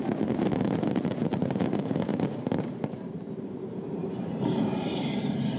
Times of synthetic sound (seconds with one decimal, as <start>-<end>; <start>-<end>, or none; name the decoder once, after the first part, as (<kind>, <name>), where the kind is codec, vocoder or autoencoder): 0.0-5.6 (vocoder, BigVGAN v2)